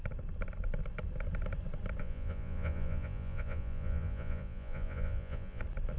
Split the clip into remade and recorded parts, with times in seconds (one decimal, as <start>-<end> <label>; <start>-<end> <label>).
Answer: 0.0-2.0 recorded; 2.0-5.6 remade; 5.6-6.0 recorded